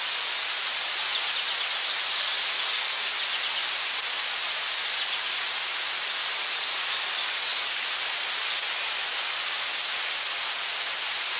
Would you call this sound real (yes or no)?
yes